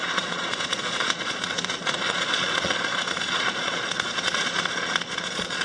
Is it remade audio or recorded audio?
remade